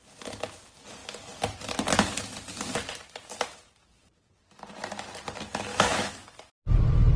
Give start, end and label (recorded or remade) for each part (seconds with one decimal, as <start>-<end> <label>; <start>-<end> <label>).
0.0-5.7 recorded; 5.7-6.5 remade; 6.5-7.2 recorded